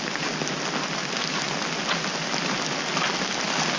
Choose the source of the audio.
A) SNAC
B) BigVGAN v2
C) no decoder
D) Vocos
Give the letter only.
C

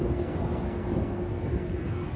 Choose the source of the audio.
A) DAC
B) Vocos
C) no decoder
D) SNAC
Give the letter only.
D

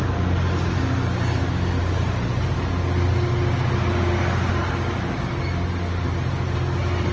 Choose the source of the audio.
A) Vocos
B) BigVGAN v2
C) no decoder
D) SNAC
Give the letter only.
C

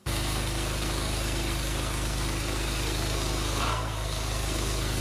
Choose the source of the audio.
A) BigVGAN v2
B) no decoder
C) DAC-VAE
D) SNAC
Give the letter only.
D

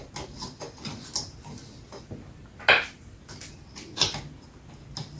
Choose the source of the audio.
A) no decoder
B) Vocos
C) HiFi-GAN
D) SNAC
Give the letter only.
A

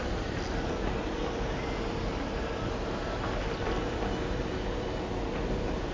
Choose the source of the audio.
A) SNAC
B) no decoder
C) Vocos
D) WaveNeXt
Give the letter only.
B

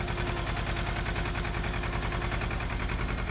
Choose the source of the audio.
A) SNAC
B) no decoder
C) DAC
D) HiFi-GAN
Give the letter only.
B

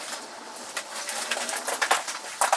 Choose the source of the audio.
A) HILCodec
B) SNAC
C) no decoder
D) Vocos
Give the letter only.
C